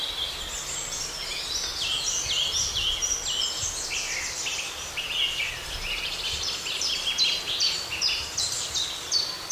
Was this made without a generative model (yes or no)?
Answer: yes